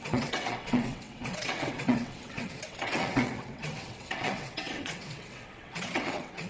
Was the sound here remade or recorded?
remade